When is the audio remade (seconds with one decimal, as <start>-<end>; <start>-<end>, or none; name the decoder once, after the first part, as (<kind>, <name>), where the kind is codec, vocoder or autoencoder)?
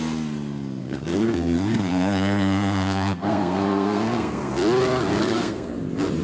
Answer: 0.8-4.5 (codec, SNAC); 5.1-5.7